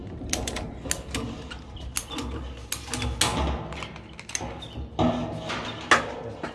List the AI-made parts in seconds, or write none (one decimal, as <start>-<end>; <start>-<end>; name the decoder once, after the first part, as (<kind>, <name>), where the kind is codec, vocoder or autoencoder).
0.0-0.8 (vocoder, BigVGAN v2)